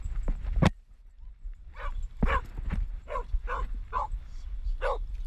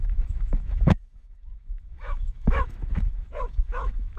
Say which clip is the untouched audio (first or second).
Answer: first